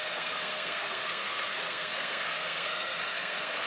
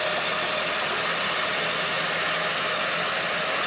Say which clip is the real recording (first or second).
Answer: second